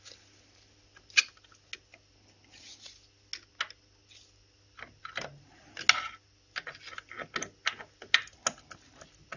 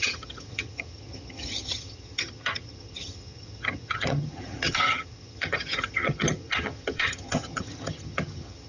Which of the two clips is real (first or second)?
first